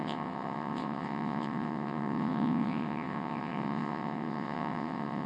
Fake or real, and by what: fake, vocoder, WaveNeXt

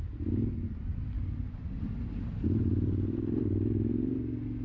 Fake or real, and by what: real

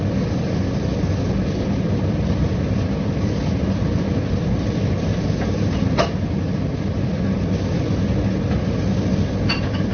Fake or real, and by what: real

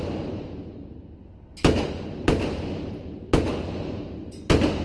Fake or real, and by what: real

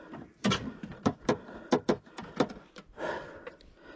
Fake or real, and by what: real